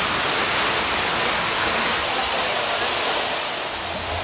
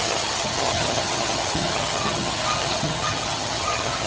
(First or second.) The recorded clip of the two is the first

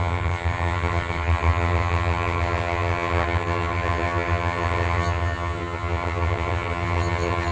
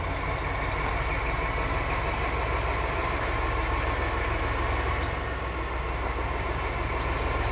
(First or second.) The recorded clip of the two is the second